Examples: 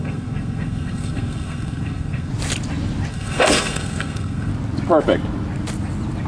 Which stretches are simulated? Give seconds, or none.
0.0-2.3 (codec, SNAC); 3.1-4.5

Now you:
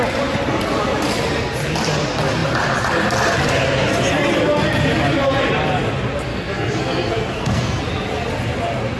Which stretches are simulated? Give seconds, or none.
6.3-7.8 (codec, SNAC)

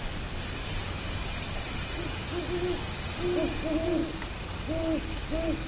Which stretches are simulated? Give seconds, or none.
none

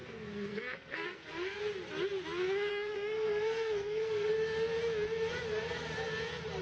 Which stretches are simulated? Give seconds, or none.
0.0-1.6 (codec, SNAC); 2.7-4.3

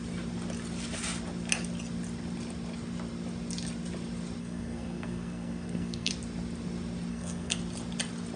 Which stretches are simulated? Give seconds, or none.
4.4-6.1 (codec, SNAC); 7.1-7.6

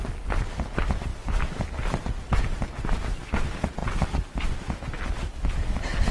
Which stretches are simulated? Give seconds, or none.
none